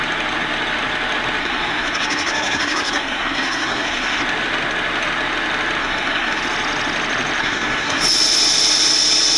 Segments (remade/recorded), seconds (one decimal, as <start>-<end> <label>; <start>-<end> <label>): 0.0-1.4 recorded; 1.4-4.2 remade; 4.2-5.8 recorded; 5.8-6.4 remade; 6.4-7.4 recorded; 7.4-8.0 remade; 8.0-9.4 recorded